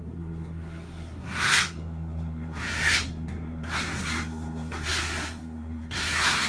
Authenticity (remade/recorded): remade